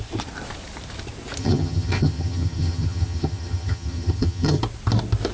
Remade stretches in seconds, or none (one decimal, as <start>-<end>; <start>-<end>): 1.4-4.6